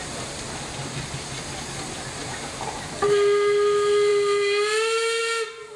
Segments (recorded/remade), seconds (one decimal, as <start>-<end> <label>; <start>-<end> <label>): 0.0-2.2 recorded; 2.2-2.7 remade; 2.7-5.8 recorded